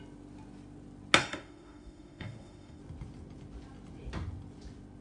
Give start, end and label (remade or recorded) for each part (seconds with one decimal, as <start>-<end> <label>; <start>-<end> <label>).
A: 0.0-1.2 recorded; 1.2-2.8 remade; 2.8-5.0 recorded

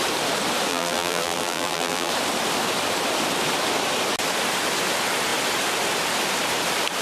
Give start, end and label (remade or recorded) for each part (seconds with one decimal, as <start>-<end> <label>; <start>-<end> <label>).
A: 0.0-0.7 recorded; 0.7-2.1 remade; 2.1-7.0 recorded

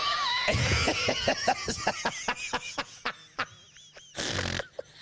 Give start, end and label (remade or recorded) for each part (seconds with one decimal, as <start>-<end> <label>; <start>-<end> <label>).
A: 0.0-3.0 remade; 3.0-5.0 recorded

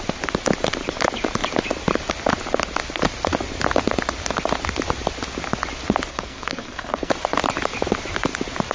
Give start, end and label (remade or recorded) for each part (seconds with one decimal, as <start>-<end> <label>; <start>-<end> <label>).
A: 0.0-6.1 recorded; 6.1-7.1 remade; 7.1-8.7 recorded

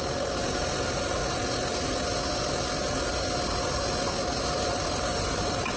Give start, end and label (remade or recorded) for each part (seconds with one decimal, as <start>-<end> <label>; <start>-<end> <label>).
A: 0.0-1.2 remade; 1.2-4.7 recorded; 4.7-5.8 remade

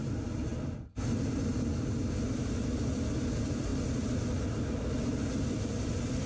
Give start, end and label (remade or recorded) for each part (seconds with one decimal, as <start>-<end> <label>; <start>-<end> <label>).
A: 0.0-0.5 remade; 0.5-2.9 recorded; 2.9-3.7 remade; 3.7-4.7 recorded; 4.7-6.3 remade